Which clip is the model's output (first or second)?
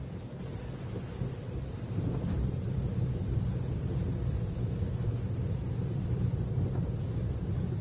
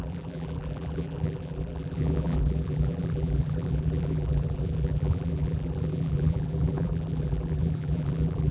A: second